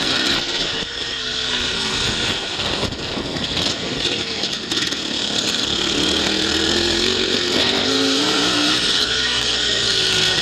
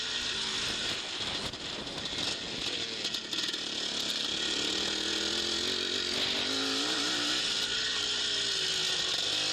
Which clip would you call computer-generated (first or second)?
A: first